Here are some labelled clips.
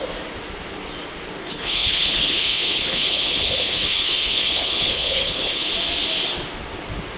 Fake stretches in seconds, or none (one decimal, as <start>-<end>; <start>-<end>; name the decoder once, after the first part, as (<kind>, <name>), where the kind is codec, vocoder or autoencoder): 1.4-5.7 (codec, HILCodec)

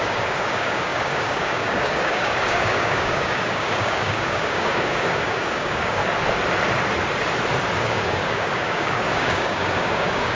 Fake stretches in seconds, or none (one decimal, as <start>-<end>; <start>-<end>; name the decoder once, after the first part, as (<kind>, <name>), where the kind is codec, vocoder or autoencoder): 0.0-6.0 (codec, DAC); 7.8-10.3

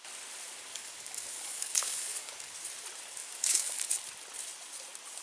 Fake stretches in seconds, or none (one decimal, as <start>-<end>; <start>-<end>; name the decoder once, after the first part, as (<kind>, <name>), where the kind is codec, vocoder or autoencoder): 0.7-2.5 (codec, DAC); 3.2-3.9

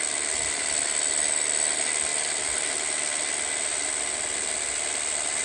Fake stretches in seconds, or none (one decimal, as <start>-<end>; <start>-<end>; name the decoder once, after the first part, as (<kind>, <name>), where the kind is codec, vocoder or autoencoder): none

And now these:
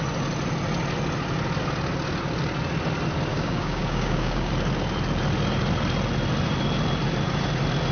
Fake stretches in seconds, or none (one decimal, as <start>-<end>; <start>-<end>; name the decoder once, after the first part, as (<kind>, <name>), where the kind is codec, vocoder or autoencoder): 3.3-4.5 (codec, DAC)